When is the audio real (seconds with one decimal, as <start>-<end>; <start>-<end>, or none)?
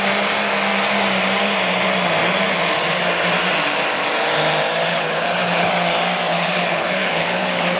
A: 0.0-4.9; 5.7-6.3